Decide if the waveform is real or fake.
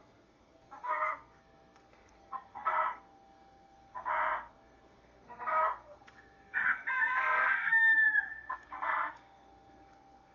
fake